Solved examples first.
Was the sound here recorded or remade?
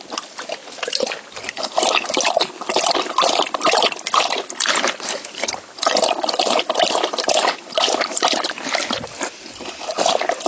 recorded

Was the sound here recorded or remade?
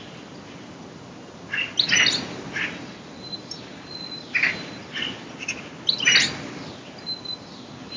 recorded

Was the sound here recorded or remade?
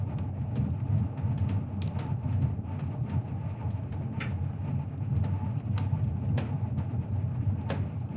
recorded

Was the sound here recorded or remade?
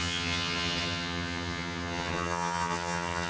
remade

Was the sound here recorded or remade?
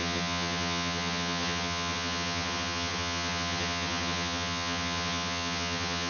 remade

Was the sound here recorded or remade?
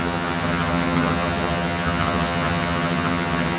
remade